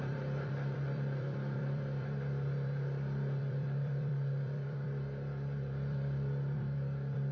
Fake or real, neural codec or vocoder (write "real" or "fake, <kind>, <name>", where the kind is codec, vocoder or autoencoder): fake, vocoder, BigVGAN v2